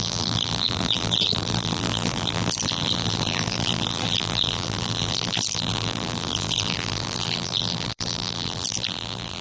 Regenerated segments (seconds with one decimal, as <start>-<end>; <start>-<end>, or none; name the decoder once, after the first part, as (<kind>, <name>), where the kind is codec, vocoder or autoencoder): 0.0-9.4 (vocoder, BigVGAN v2)